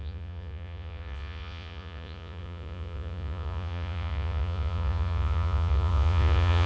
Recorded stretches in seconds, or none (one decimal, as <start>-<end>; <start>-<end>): none